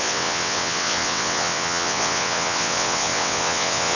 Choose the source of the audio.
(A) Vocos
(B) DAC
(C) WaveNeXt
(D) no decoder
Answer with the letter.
C